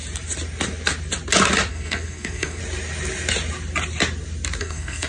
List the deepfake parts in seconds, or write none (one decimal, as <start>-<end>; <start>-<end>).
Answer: 1.7-2.6; 4.6-5.1